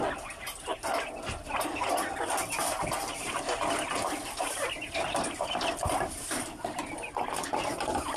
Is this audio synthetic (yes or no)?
no